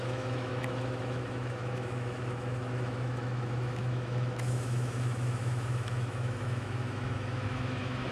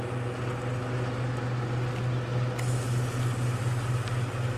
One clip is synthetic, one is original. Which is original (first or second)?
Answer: second